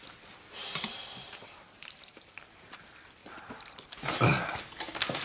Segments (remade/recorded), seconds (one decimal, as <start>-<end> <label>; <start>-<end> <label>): 0.0-0.6 recorded; 0.6-2.8 remade; 2.8-3.2 recorded; 3.2-4.1 remade; 4.1-5.2 recorded